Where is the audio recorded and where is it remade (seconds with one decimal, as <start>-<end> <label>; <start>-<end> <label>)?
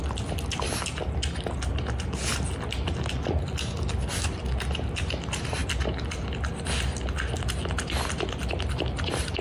0.0-9.4 recorded